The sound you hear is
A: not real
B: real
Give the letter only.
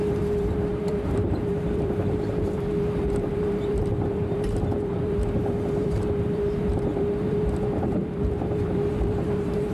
A